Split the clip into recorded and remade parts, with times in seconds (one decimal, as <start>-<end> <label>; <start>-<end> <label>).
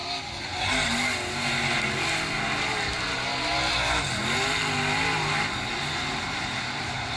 0.0-7.2 recorded